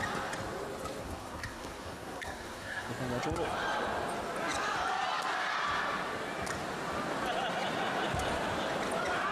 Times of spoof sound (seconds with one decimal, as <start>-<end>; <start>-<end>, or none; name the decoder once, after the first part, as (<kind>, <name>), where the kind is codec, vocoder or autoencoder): 1.0-2.9 (codec, SNAC)